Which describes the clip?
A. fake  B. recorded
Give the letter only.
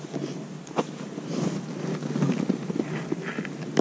B